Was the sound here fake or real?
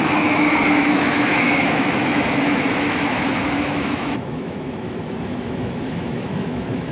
fake